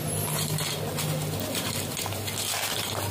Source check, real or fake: real